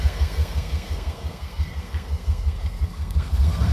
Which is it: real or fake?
fake